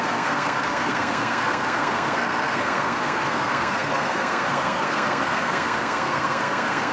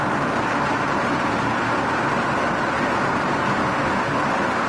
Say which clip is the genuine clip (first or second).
second